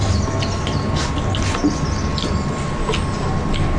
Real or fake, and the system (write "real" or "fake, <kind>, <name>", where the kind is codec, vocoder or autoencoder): real